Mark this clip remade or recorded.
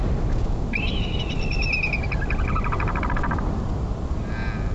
recorded